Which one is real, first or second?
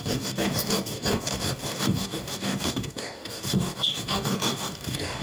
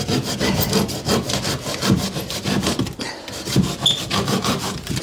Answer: second